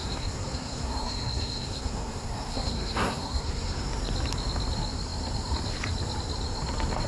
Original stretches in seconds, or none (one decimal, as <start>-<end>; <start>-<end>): 3.9-7.1